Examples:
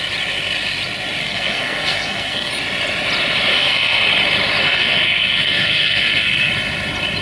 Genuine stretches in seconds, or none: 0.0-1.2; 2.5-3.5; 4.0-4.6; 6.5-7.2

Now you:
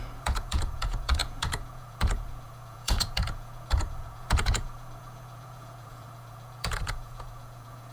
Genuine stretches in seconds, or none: none

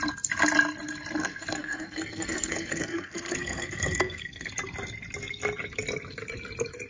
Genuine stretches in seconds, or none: 0.0-1.2; 4.5-6.9

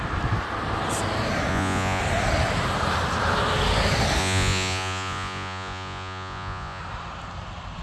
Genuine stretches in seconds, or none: 0.0-1.5; 2.0-4.2; 6.8-7.8

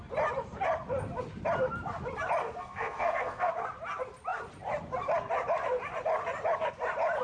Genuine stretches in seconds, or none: 0.0-2.4; 3.5-7.2